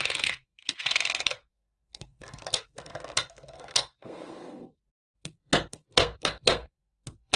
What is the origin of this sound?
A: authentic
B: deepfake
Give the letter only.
B